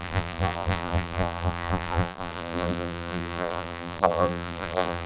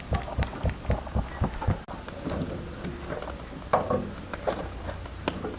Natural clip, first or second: second